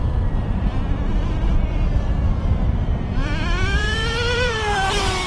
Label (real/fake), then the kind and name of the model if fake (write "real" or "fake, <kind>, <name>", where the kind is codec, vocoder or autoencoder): fake, vocoder, BigVGAN v2